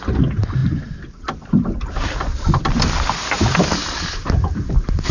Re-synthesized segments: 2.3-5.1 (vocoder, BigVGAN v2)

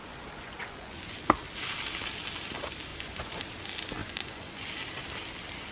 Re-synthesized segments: 0.0-1.2 (vocoder, Vocos); 2.9-3.4; 4.0-4.7

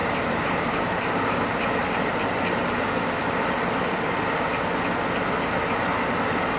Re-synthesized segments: 0.0-0.8 (vocoder, BigVGAN v2); 1.8-2.3

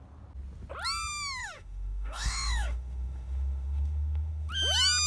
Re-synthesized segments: 1.4-4.5 (autoencoder, DAC-VAE)

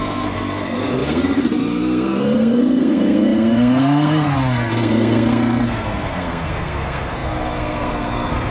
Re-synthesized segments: 0.0-8.5 (codec, SNAC)